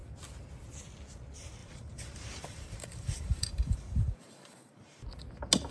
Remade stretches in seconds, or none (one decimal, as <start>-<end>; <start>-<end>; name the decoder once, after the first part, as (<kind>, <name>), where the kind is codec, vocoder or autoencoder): 1.6-5.0 (vocoder, BigVGAN v2)